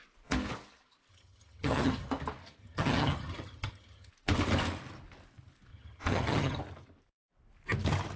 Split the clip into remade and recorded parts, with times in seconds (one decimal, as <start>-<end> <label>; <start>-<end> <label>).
0.0-1.1 recorded; 1.1-2.1 remade; 2.1-2.6 recorded; 2.6-4.1 remade; 4.1-5.7 recorded; 5.7-6.6 remade; 6.6-8.2 recorded

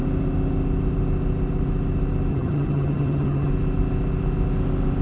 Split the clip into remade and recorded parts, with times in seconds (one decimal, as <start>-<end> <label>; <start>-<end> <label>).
0.0-2.3 recorded; 2.3-3.5 remade; 3.5-5.0 recorded

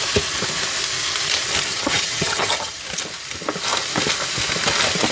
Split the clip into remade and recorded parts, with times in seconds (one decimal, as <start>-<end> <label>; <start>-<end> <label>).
0.0-1.7 recorded; 1.7-2.8 remade; 2.8-5.1 recorded

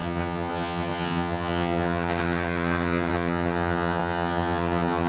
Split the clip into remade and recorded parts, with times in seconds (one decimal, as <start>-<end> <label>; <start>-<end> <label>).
0.0-5.1 remade